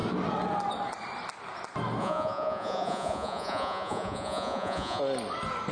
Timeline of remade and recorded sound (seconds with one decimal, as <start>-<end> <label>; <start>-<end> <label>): 0.0-2.0 recorded; 2.0-5.0 remade; 5.0-5.7 recorded